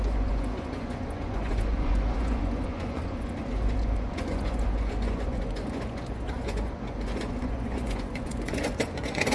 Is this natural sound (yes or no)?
no